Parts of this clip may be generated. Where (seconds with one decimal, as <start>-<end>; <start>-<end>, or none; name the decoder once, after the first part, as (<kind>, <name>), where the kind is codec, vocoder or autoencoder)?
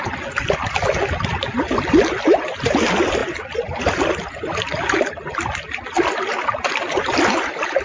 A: none